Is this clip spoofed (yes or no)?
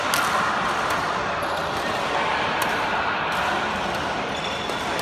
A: no